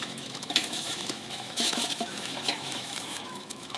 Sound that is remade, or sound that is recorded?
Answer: remade